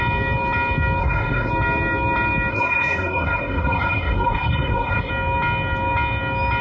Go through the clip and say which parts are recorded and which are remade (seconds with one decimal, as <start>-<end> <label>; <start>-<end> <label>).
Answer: 0.0-1.0 recorded; 1.0-1.5 remade; 1.5-2.5 recorded; 2.5-5.1 remade; 5.1-6.6 recorded